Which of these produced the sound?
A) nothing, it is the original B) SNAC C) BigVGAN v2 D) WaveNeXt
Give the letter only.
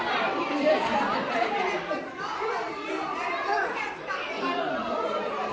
C